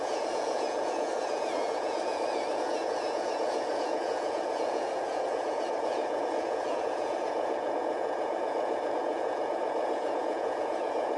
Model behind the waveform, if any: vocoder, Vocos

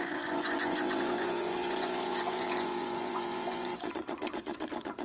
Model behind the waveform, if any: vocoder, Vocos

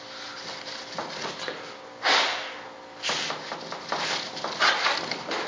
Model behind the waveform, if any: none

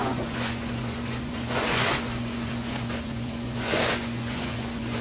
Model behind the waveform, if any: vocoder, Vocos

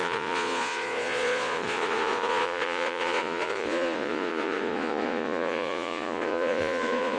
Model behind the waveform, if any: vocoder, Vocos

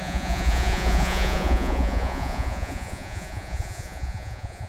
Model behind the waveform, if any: vocoder, Vocos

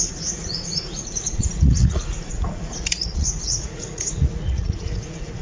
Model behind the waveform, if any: vocoder, Vocos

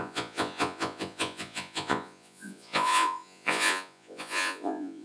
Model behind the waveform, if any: vocoder, Vocos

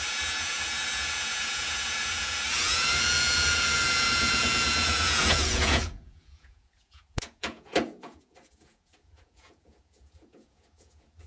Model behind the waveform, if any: vocoder, Vocos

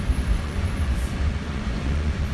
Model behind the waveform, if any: vocoder, Vocos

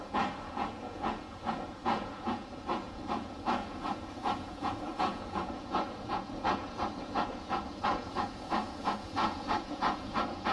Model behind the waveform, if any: vocoder, Vocos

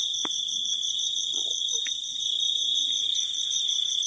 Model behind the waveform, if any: vocoder, Vocos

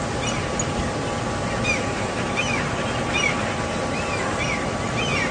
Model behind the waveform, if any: none